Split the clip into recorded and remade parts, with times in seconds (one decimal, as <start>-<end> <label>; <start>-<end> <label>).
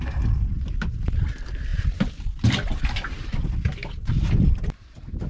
0.0-5.3 recorded